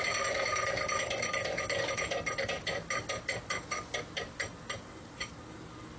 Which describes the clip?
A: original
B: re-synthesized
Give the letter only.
A